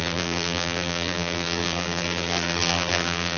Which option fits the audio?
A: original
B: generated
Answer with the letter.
B